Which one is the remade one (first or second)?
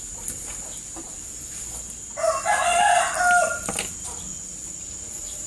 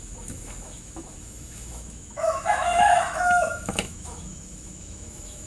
second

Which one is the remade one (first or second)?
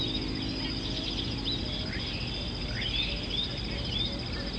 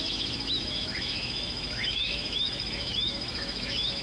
second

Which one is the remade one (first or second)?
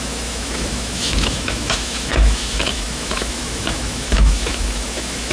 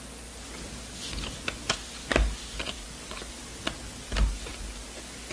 first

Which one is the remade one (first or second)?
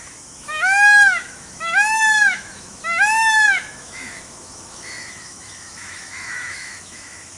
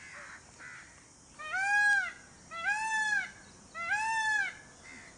first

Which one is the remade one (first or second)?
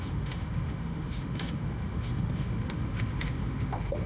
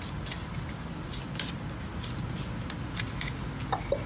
first